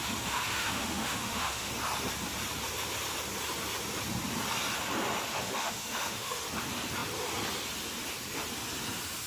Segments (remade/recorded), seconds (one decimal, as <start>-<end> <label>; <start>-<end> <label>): 0.0-1.7 remade; 1.7-5.3 recorded; 5.3-6.4 remade; 6.4-9.3 recorded